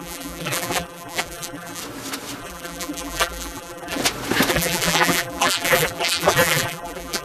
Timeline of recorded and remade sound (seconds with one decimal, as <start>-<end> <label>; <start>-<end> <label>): 0.0-1.8 remade; 1.8-2.4 recorded; 2.4-4.0 remade; 4.0-4.5 recorded; 4.5-7.2 remade